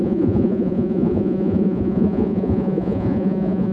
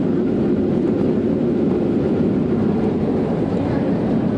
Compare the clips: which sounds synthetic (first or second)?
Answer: first